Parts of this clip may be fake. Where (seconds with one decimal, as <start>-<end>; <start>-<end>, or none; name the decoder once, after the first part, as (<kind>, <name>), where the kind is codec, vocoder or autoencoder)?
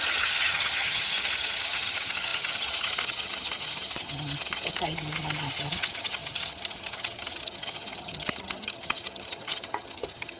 0.0-10.4 (vocoder, HiFi-GAN)